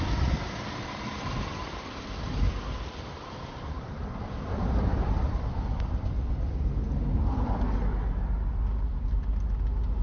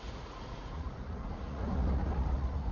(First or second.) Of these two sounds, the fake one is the second